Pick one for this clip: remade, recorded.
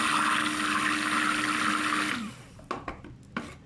recorded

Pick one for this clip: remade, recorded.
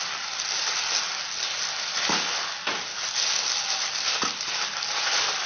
recorded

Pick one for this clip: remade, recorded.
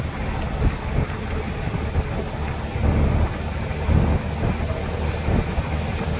recorded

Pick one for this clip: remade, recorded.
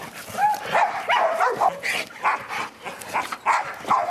recorded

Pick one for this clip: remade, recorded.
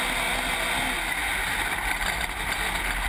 recorded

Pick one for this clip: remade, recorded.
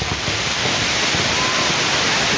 recorded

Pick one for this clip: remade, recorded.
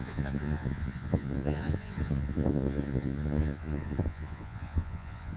remade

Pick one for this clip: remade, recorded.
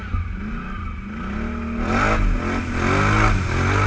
recorded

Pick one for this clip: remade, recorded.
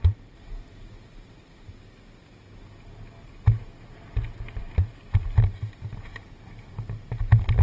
recorded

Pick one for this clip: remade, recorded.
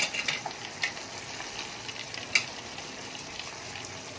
recorded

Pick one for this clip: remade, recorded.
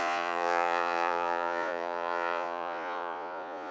remade